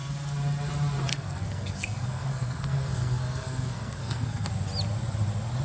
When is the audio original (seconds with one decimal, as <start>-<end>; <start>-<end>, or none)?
0.0-1.1; 4.5-5.6